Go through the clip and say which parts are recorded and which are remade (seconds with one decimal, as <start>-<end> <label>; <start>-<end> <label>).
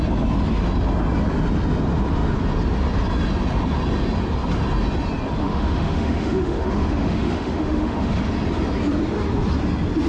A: 0.0-5.4 recorded; 5.4-8.2 remade; 8.2-10.1 recorded